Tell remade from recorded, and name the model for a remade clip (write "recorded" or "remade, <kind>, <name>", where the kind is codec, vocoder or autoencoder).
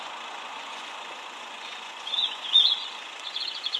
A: remade, vocoder, Vocos